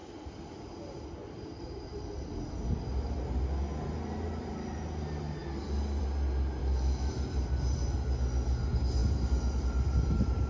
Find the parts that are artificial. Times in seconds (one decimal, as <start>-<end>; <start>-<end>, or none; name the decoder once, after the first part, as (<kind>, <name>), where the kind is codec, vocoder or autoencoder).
6.6-7.1 (autoencoder, DAC-VAE)